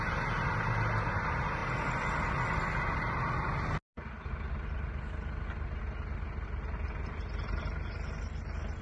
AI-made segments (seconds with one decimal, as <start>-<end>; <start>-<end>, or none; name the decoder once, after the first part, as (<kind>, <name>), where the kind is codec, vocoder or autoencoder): none